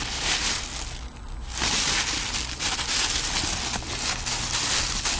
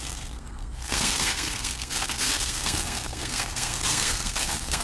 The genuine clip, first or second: first